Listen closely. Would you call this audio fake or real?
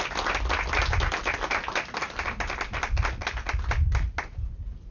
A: real